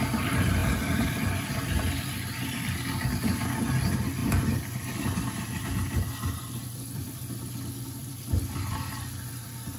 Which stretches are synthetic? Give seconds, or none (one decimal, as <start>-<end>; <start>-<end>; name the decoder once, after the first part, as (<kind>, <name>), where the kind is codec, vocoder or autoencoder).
0.6-2.1 (vocoder, BigVGAN v2); 4.2-7.5; 8.0-9.8